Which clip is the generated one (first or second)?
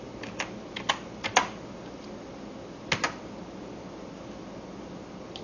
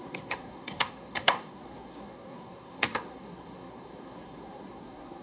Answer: second